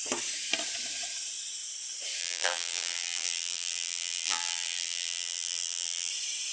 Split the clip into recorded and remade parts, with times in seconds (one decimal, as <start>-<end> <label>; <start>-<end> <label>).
0.0-2.2 recorded; 2.2-6.1 remade; 6.1-6.5 recorded